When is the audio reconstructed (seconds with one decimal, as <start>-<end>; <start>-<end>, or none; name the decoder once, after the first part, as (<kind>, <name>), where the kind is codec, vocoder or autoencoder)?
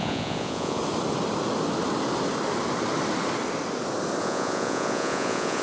0.0-0.8 (vocoder, Vocos); 4.2-5.6